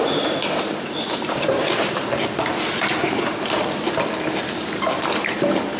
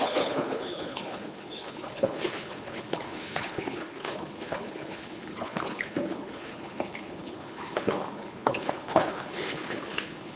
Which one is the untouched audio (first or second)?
first